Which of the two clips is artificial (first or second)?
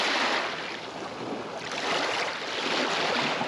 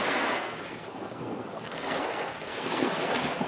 second